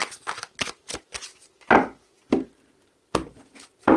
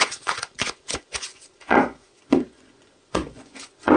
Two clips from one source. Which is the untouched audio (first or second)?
first